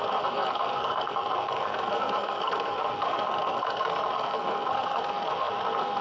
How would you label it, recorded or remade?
remade